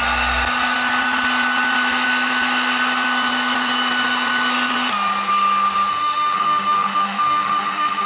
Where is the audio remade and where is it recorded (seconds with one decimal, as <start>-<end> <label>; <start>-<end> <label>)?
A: 0.0-5.9 recorded; 5.9-8.1 remade